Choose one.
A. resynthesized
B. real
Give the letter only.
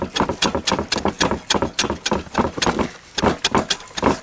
B